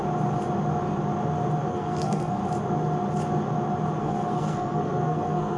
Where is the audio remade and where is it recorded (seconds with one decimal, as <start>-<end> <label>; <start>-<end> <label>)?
0.0-1.7 recorded; 1.7-2.4 remade; 2.4-4.0 recorded; 4.0-5.6 remade